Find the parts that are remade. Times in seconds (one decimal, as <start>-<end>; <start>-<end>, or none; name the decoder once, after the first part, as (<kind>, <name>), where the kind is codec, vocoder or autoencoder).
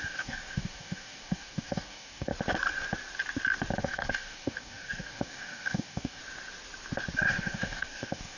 0.0-2.3 (codec, DAC); 3.8-6.2; 7.3-8.4